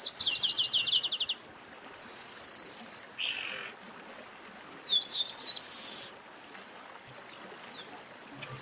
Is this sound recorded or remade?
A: recorded